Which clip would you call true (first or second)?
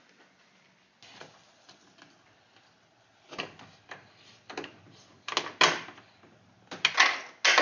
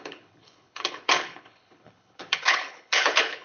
first